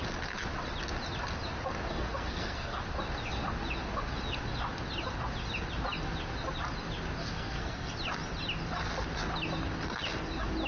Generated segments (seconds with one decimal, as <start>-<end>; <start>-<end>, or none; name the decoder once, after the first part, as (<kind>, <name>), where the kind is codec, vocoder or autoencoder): 1.9-2.8 (codec, SNAC); 7.2-7.9